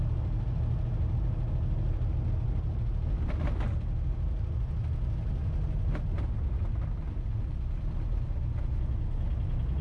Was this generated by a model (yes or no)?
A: no